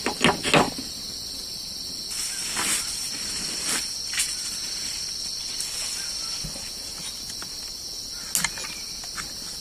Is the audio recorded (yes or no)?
yes